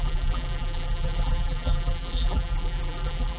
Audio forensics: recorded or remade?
remade